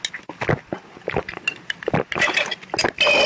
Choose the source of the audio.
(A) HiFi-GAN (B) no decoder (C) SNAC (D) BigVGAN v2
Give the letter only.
B